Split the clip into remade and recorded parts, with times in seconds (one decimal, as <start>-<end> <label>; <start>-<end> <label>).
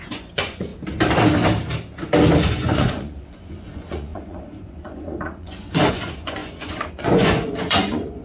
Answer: 0.0-0.7 remade; 0.7-2.4 recorded; 2.4-8.2 remade